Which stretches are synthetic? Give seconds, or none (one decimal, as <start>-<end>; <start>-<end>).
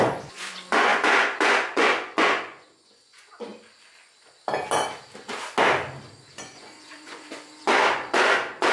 0.0-3.5; 6.3-8.7